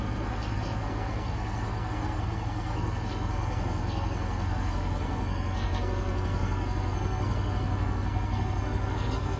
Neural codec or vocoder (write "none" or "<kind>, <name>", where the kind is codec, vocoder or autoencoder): codec, SNAC